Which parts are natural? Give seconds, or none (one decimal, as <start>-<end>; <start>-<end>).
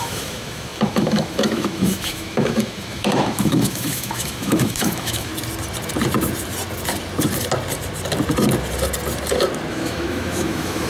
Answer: 5.3-9.7